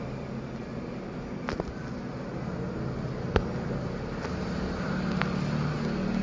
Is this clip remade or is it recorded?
recorded